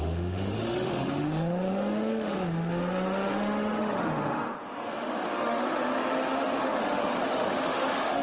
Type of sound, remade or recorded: remade